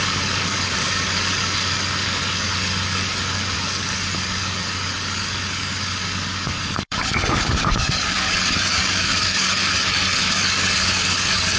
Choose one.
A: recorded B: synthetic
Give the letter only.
B